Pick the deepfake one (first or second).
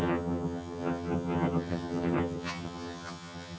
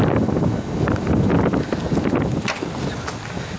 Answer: first